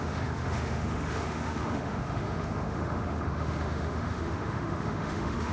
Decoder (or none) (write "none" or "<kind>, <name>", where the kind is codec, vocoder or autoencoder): autoencoder, DAC-VAE